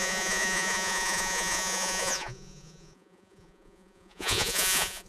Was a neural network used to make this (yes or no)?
yes